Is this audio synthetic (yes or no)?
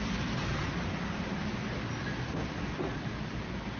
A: no